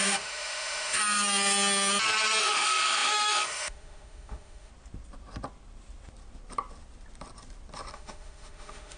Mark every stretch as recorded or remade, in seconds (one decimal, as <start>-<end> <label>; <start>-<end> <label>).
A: 0.0-1.0 remade; 1.0-2.4 recorded; 2.4-4.7 remade; 4.7-7.9 recorded; 7.9-9.0 remade

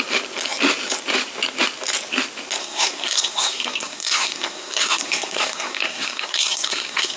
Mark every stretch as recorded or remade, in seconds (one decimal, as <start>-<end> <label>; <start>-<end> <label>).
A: 0.0-2.6 recorded; 2.6-7.2 remade

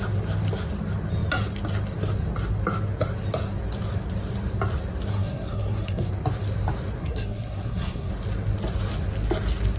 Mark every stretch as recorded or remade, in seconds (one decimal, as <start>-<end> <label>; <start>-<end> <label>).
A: 0.0-5.1 recorded; 5.1-6.1 remade; 6.1-7.0 recorded; 7.0-8.1 remade; 8.1-9.8 recorded

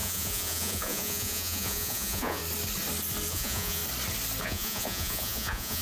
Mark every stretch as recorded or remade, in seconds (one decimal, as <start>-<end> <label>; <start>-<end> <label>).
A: 0.0-2.4 remade; 2.4-3.3 recorded; 3.3-3.8 remade; 3.8-4.4 recorded; 4.4-5.8 remade

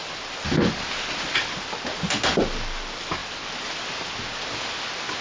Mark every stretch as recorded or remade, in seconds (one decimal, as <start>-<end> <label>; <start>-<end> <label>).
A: 0.0-5.2 recorded